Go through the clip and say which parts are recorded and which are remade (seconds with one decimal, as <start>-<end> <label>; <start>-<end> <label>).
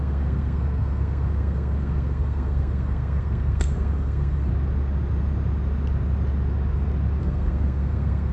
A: 0.0-4.5 remade; 4.5-7.2 recorded; 7.2-8.3 remade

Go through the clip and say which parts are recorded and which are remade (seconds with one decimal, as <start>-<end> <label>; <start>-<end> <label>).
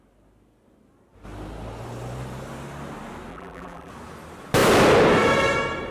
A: 0.0-3.3 recorded; 3.3-3.9 remade; 3.9-5.9 recorded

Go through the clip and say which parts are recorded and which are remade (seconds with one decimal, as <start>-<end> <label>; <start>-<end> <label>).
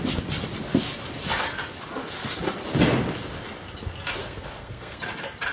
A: 0.0-4.2 recorded; 4.2-5.0 remade; 5.0-5.5 recorded